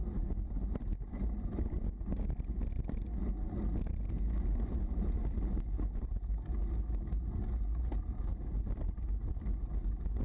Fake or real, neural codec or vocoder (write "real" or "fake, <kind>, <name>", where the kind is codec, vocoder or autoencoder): real